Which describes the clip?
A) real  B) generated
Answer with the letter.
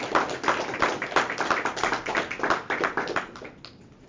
A